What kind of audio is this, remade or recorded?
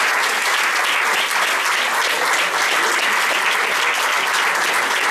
recorded